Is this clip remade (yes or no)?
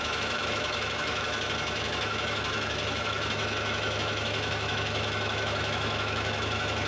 yes